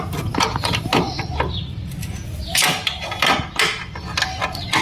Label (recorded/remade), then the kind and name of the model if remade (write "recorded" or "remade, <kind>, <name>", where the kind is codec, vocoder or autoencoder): recorded